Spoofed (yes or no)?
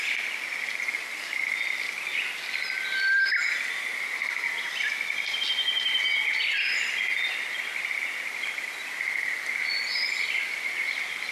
no